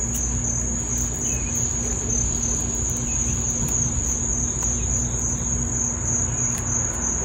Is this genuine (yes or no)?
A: yes